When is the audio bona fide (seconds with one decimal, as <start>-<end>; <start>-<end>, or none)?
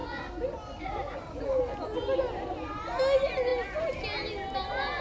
0.0-5.0